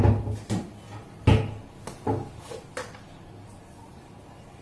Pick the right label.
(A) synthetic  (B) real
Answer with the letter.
B